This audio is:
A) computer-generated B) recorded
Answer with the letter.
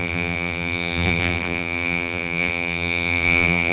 A